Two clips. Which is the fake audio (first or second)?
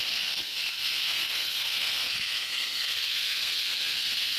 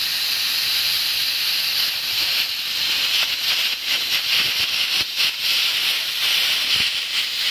first